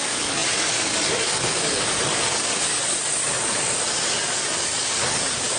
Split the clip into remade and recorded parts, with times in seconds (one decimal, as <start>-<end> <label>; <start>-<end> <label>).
0.0-5.6 remade

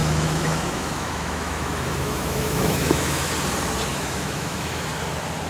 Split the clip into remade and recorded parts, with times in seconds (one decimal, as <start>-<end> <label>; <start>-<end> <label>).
0.0-3.3 remade; 3.3-3.9 recorded; 3.9-4.9 remade; 4.9-5.5 recorded

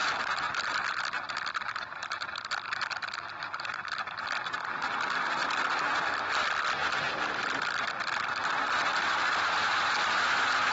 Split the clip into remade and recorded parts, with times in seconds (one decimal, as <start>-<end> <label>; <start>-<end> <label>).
0.0-2.4 remade; 2.4-10.7 recorded

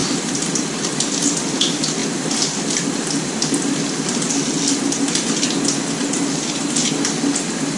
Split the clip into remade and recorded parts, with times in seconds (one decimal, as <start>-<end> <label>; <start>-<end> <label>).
0.0-7.8 recorded

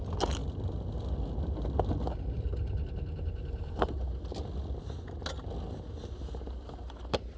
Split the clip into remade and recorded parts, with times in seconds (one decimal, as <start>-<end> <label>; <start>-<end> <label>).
0.0-7.4 recorded